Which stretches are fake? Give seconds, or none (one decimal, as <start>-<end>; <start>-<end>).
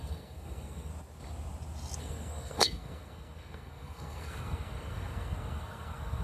0.0-0.9; 2.0-6.2